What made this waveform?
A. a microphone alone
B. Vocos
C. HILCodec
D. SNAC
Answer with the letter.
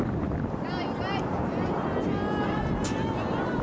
A